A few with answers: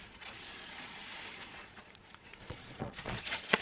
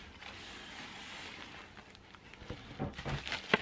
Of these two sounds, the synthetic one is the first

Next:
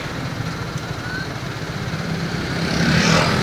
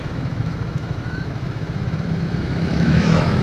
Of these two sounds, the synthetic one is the second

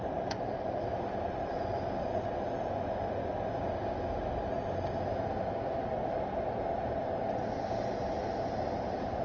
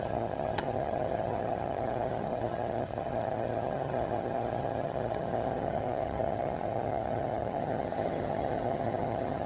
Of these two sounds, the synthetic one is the second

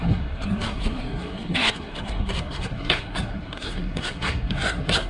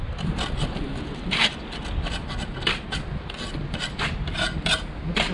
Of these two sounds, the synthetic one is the first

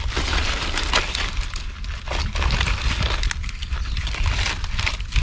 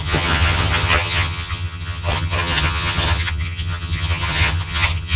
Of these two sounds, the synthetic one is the second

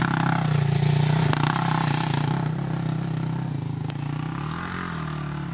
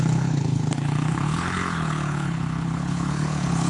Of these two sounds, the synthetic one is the second